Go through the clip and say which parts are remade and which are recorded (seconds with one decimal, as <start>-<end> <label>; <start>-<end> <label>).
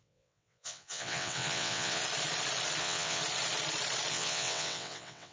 0.0-2.0 remade; 2.0-2.8 recorded; 2.8-3.2 remade; 3.2-4.1 recorded; 4.1-5.3 remade